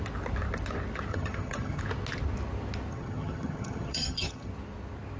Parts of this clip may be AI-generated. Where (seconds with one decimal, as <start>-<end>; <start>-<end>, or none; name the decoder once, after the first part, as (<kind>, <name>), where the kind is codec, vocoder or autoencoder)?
1.1-1.8 (vocoder, HiFi-GAN); 2.9-4.5